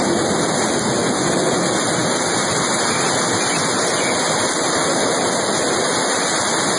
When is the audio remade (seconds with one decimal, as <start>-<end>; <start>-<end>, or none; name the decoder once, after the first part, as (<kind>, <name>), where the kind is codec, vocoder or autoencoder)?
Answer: 1.0-1.6 (vocoder, Vocos)